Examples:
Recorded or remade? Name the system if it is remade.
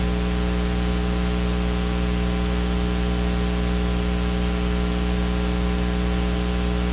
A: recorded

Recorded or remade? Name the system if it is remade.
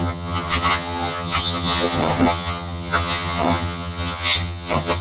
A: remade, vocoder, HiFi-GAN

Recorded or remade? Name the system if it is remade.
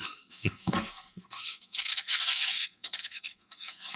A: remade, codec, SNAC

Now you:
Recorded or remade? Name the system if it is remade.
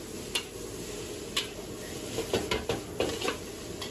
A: recorded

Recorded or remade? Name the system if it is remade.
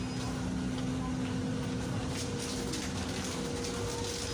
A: recorded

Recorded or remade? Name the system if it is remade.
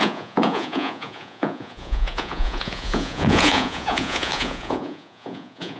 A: remade, vocoder, Vocos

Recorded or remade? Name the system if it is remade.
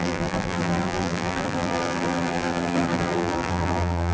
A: remade, vocoder, BigVGAN v2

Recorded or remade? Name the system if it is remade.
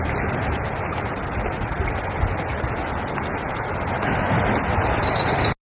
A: recorded